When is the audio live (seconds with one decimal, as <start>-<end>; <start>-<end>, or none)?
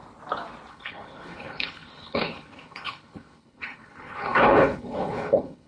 0.0-0.7